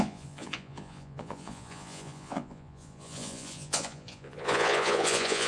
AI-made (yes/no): yes